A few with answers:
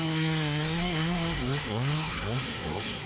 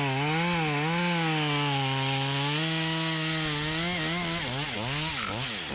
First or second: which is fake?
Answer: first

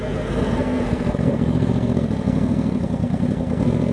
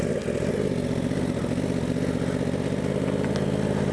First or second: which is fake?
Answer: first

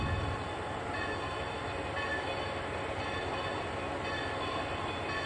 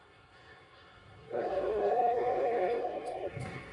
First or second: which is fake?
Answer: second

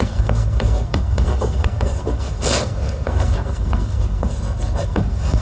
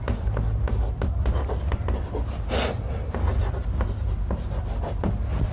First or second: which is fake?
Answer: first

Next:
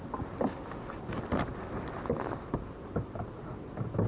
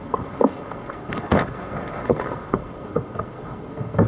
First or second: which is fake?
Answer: second